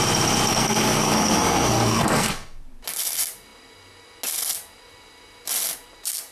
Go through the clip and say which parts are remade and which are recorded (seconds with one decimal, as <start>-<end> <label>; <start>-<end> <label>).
0.0-0.5 recorded; 0.5-2.6 remade; 2.6-6.3 recorded